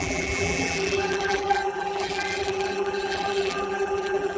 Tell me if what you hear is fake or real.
fake